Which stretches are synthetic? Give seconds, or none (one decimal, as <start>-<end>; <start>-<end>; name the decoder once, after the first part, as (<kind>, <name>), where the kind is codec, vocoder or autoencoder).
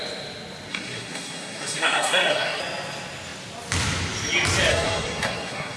0.7-2.6 (codec, SNAC); 4.7-5.8